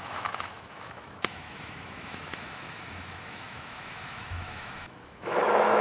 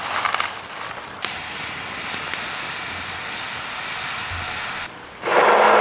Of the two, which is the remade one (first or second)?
first